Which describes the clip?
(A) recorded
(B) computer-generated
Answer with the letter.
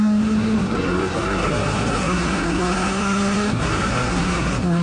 B